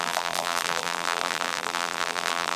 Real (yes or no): no